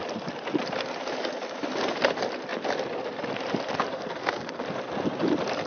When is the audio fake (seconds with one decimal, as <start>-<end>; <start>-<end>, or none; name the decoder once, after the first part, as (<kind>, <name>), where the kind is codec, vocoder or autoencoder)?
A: 3.9-4.6 (codec, SNAC)